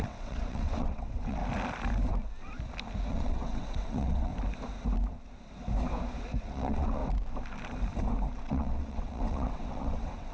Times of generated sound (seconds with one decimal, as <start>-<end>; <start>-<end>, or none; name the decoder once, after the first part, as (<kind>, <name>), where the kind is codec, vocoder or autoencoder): 0.0-1.4 (vocoder, WaveNeXt); 3.1-4.3; 6.4-7.0; 8.4-10.3